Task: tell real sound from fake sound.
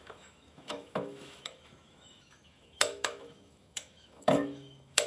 fake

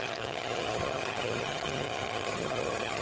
fake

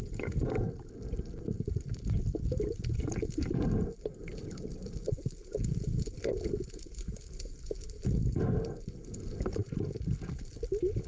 real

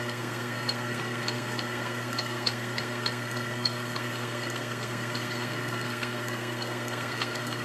fake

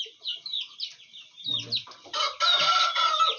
real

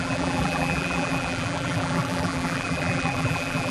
fake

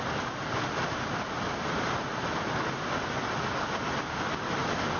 real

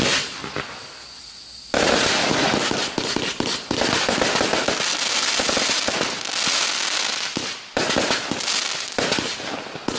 real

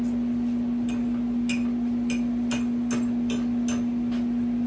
real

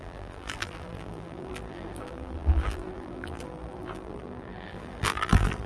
fake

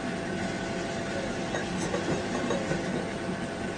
real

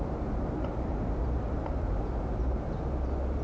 real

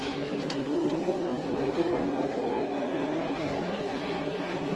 fake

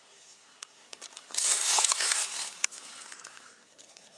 fake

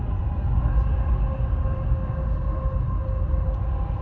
real